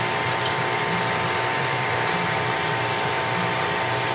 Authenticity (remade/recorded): remade